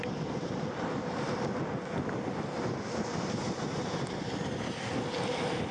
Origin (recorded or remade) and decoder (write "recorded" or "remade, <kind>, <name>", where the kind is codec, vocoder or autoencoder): recorded